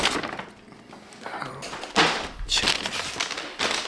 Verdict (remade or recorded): recorded